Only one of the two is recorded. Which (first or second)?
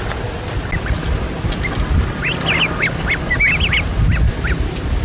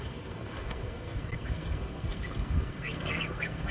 first